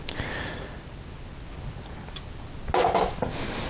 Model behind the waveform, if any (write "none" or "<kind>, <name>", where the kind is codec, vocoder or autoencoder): none